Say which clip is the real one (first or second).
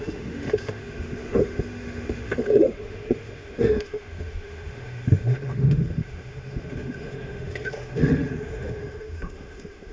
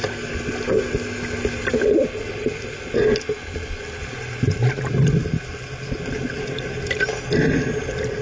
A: second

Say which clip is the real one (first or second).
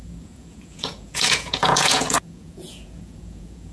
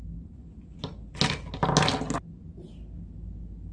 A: second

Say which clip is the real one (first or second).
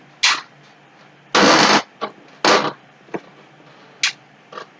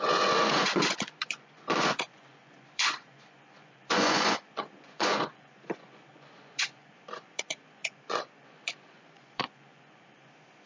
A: first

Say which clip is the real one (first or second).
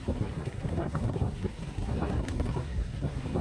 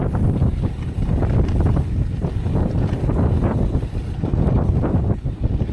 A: second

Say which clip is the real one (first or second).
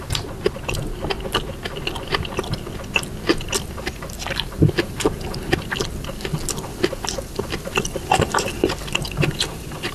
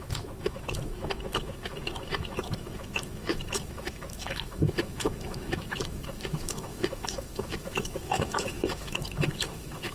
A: first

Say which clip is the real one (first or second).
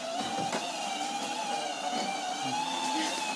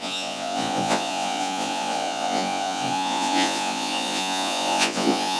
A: first